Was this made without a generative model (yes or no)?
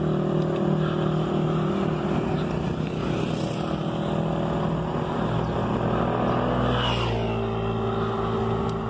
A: yes